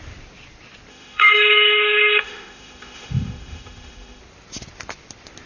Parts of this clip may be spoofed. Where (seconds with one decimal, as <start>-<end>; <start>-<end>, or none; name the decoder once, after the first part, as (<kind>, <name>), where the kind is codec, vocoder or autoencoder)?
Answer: 0.9-4.2 (autoencoder, DAC-VAE)